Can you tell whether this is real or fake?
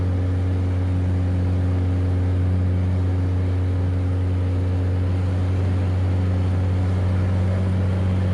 real